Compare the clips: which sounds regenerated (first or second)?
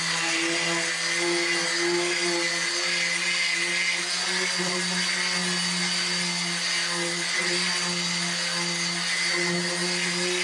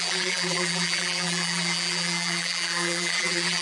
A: second